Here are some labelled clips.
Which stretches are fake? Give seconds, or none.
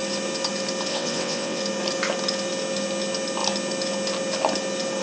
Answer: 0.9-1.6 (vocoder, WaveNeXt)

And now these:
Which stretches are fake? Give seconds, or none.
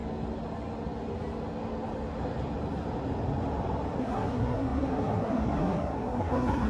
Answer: 4.0-6.7 (codec, SNAC)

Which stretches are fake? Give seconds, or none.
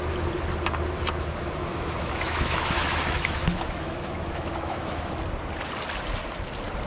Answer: 1.6-5.1 (autoencoder, DAC-VAE)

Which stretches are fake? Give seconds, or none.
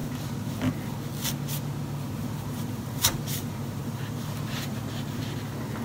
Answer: 0.0-0.7 (vocoder, BigVGAN v2); 2.2-5.2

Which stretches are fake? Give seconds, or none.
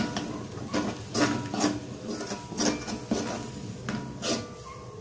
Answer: none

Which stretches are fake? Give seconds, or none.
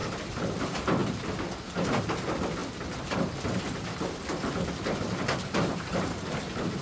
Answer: 0.6-1.0 (vocoder, BigVGAN v2); 2.0-2.6; 5.7-6.8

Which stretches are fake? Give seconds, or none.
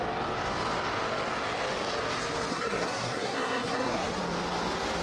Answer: 2.5-4.2 (codec, SNAC)